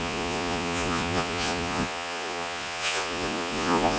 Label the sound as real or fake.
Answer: fake